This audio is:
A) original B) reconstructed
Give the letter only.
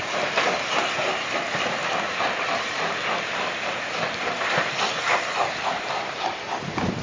A